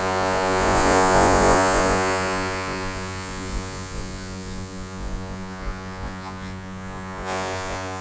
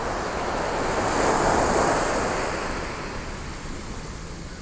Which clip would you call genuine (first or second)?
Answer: second